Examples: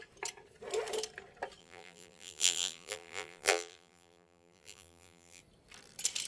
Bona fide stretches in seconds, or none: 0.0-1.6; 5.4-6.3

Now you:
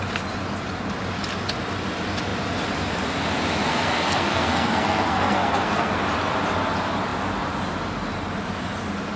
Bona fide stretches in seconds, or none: 0.0-3.7; 6.0-9.2

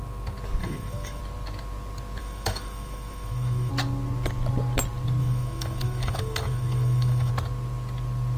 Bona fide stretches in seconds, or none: 0.0-0.6; 1.2-2.2; 3.7-5.2; 7.3-8.4